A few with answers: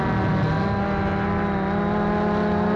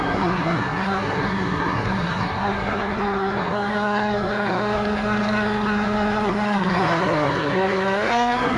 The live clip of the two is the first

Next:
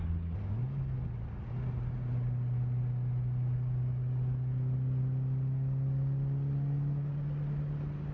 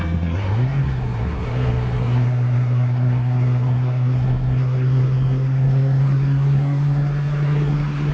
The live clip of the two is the first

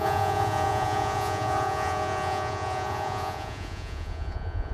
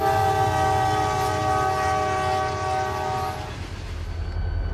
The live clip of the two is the second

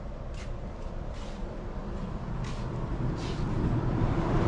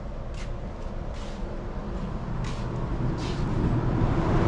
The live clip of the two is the second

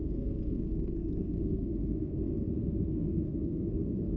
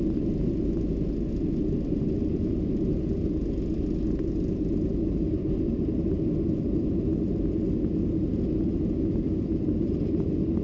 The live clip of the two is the second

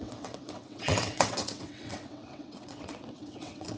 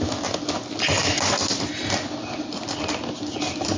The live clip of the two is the second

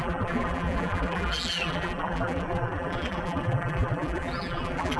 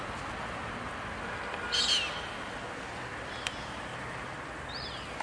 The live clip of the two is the second